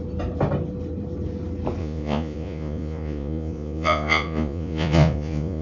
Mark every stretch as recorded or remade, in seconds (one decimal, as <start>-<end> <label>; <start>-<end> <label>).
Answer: 0.0-1.8 recorded; 1.8-5.6 remade